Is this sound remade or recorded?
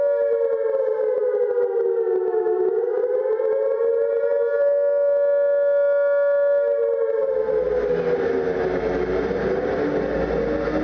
recorded